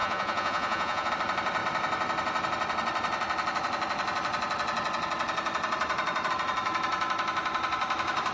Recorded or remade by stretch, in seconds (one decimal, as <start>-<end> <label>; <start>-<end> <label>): 0.0-1.1 remade; 1.1-8.3 recorded